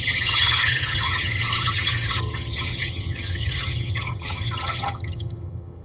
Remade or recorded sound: remade